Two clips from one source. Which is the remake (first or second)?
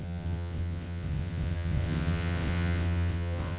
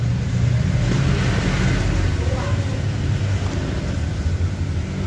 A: first